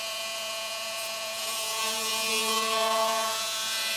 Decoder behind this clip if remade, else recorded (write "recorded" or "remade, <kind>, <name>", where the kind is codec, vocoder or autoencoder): remade, vocoder, Vocos